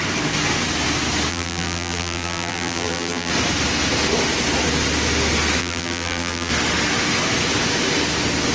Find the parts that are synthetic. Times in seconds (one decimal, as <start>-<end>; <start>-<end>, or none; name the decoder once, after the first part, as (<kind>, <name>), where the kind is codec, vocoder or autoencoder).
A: 1.3-3.3 (vocoder, BigVGAN v2); 5.6-6.5

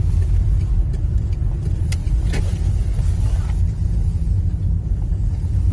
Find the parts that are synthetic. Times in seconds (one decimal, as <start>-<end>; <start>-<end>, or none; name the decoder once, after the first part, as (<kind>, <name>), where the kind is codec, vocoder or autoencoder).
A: none